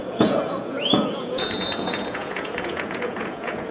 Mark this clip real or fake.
fake